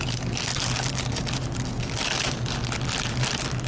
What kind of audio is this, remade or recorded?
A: recorded